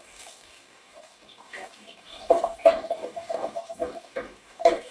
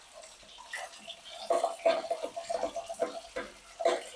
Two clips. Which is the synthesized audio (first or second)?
first